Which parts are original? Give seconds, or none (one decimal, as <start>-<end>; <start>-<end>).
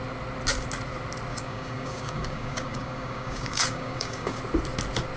0.0-1.3; 4.4-5.2